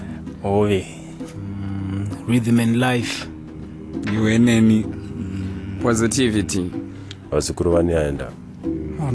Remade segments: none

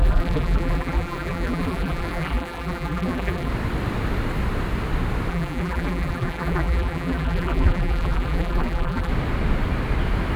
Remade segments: 0.0-3.5; 5.3-9.1

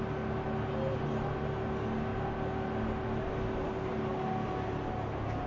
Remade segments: none

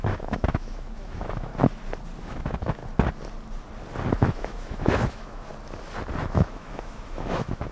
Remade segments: 0.0-1.5; 2.2-2.8; 4.1-5.5; 6.2-7.7

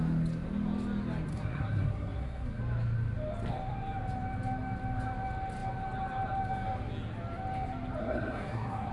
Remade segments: 1.3-2.6; 8.0-8.9

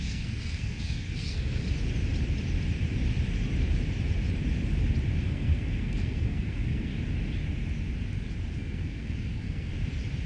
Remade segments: 0.0-1.6; 5.2-6.9; 8.5-9.7

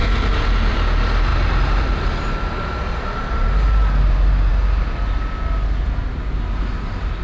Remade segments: 0.0-1.3; 3.3-4.5; 6.7-7.2